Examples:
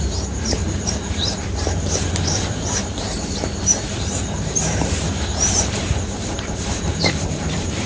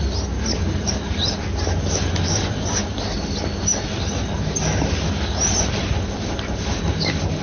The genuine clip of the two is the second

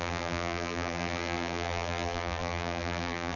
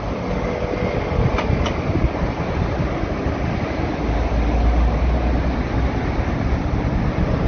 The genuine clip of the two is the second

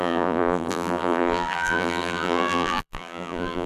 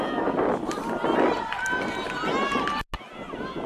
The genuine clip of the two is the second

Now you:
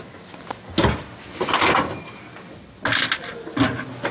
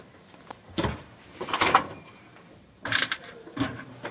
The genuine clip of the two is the first